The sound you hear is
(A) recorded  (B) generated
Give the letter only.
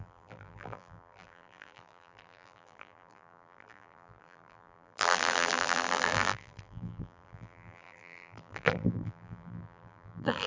B